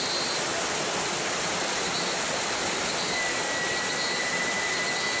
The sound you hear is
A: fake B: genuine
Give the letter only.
B